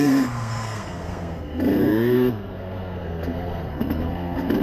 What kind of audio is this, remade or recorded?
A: remade